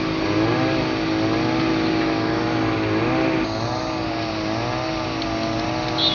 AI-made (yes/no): no